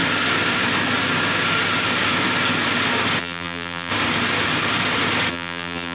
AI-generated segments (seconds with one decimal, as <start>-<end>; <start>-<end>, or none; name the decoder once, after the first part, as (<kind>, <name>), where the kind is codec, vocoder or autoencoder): 3.2-3.9 (vocoder, BigVGAN v2); 5.3-5.9